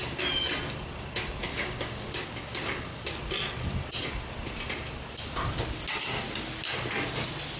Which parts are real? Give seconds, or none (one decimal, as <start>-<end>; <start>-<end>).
0.0-1.5; 3.1-7.6